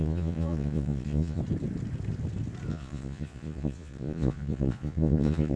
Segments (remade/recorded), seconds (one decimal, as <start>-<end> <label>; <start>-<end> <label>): 0.0-1.4 remade; 1.4-2.7 recorded; 2.7-5.6 remade